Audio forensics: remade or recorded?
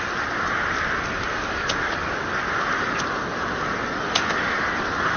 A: recorded